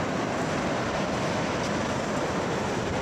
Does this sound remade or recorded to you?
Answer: recorded